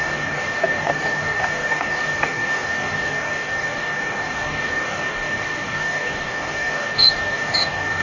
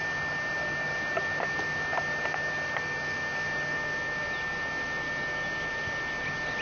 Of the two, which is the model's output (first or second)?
first